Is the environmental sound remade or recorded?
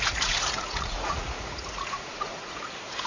remade